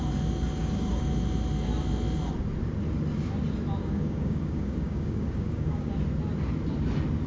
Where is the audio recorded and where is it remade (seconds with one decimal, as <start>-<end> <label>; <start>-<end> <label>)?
0.0-0.6 recorded; 0.6-1.1 remade; 1.1-3.8 recorded; 3.8-5.9 remade; 5.9-7.3 recorded